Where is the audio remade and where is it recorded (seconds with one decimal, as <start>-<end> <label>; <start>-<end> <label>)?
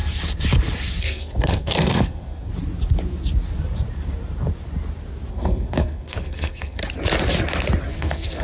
0.0-1.0 recorded; 1.0-2.5 remade; 2.5-5.3 recorded; 5.3-6.8 remade; 6.8-7.9 recorded; 7.9-8.4 remade